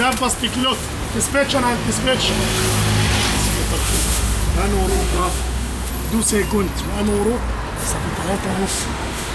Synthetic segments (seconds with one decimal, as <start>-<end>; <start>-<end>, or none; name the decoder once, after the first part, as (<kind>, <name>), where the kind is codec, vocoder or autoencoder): 3.8-4.4 (autoencoder, DAC-VAE); 4.9-5.9; 8.5-9.3